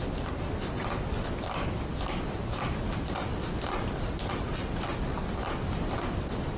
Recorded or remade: recorded